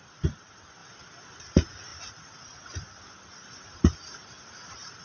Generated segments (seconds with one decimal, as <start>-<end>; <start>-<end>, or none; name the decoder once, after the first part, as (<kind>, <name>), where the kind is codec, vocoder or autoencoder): none